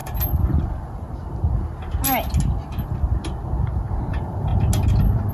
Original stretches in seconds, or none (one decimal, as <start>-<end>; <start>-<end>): 1.2-4.1; 4.5-5.3